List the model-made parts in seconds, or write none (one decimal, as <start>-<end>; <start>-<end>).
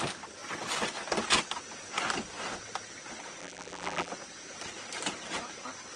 3.4-4.1